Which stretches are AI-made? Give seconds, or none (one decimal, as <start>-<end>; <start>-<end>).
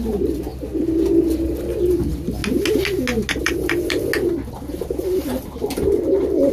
0.0-0.5; 1.7-2.4; 3.4-4.1; 5.0-6.5